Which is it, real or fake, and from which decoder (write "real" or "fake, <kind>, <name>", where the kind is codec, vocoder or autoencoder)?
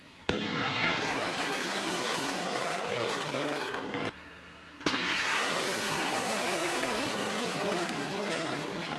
fake, codec, SNAC